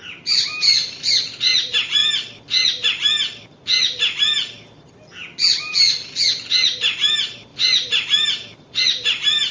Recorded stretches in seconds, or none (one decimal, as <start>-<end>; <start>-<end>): 2.0-6.5